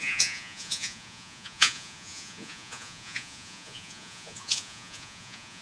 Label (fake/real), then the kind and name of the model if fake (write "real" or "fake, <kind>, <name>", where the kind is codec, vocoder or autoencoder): fake, vocoder, Vocos